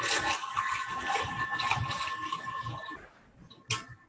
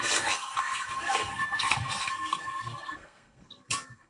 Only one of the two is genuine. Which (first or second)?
first